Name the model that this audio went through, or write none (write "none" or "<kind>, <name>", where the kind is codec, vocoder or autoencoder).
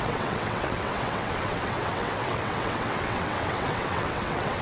vocoder, WaveNeXt